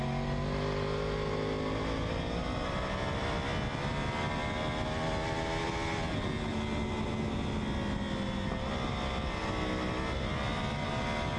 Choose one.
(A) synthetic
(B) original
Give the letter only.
B